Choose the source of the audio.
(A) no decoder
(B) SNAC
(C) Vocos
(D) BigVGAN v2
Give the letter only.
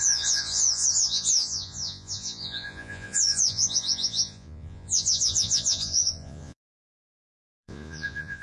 C